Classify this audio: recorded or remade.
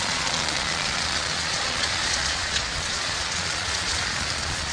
remade